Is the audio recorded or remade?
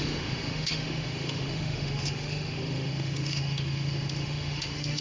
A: remade